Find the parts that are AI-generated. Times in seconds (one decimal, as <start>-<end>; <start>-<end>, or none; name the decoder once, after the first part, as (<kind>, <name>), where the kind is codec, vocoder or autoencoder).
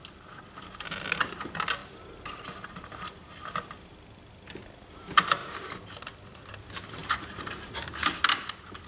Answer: 1.8-3.9 (vocoder, BigVGAN v2); 7.0-7.9